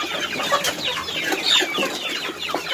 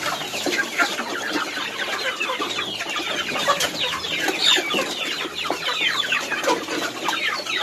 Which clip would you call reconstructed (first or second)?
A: second